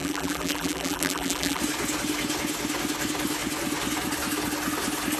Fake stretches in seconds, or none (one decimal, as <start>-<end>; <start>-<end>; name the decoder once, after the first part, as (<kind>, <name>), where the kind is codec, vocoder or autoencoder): 0.0-1.6 (vocoder, BigVGAN v2)